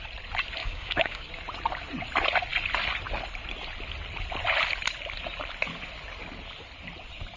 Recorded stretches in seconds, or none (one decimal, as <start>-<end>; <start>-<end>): 0.0-0.6; 1.3-7.4